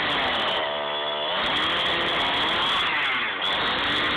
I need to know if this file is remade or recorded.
recorded